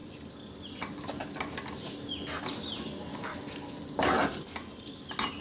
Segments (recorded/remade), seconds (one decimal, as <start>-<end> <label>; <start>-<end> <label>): 0.0-2.8 recorded; 2.8-3.3 remade; 3.3-5.4 recorded